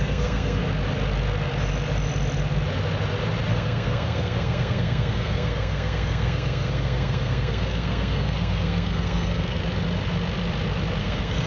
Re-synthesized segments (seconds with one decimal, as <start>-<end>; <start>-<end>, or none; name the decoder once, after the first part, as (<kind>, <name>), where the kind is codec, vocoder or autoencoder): 0.0-0.6 (codec, SNAC); 3.5-9.6; 11.0-11.5